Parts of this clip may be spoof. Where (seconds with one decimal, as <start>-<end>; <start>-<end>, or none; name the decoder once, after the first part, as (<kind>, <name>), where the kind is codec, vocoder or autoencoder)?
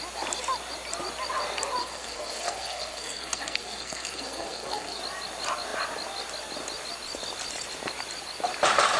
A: 1.8-5.0 (codec, SNAC)